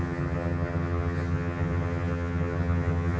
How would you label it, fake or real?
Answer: fake